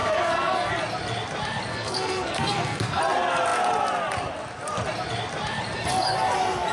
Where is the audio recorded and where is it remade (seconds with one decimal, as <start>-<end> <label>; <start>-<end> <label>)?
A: 0.0-0.7 remade; 0.7-1.7 recorded; 1.7-3.0 remade; 3.0-6.7 recorded